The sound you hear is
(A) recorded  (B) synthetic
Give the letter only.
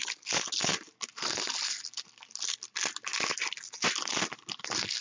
A